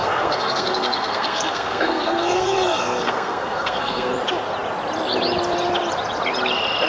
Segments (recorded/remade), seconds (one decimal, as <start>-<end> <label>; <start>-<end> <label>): 0.0-4.1 remade; 4.1-6.9 recorded